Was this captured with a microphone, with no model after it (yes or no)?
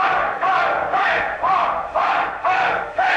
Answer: no